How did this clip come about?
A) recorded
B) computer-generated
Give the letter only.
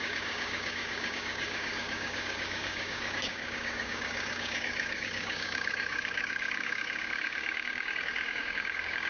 B